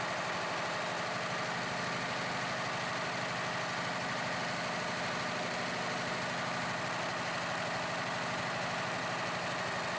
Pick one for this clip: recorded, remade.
recorded